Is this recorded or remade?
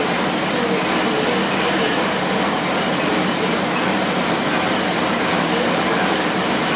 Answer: recorded